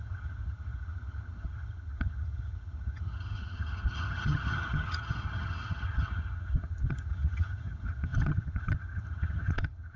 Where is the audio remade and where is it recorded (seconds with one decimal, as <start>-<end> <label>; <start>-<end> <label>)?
0.0-10.0 remade